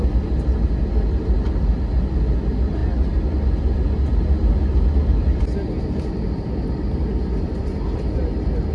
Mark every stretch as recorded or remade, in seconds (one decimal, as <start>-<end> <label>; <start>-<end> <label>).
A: 0.0-8.7 recorded